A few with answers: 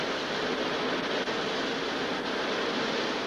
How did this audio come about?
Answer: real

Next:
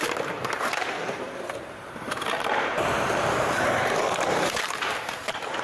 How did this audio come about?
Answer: fake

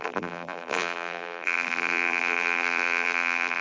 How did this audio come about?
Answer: fake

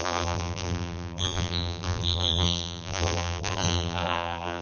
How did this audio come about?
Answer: fake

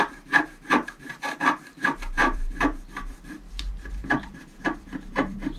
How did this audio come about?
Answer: fake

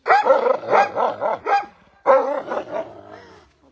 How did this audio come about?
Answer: fake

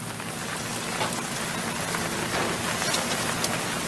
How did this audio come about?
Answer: real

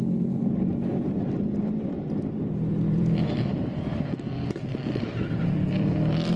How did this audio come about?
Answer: fake